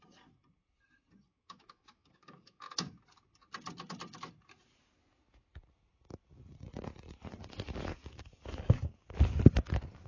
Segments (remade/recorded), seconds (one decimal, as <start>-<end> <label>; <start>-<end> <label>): 0.0-1.3 recorded; 1.3-2.9 remade; 2.9-10.1 recorded